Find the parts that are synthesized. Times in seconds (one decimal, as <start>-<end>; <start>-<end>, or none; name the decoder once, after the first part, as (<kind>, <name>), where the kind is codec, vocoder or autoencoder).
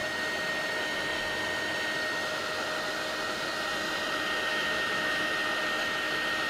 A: 4.5-5.3 (autoencoder, DAC-VAE)